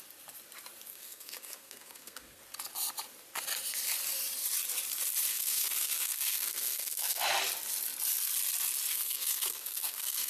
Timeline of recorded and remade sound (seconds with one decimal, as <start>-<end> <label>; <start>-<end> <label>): 0.0-0.9 recorded; 0.9-2.4 remade; 2.4-5.3 recorded; 5.3-7.2 remade; 7.2-8.9 recorded; 8.9-10.3 remade